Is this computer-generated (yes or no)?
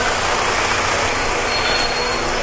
no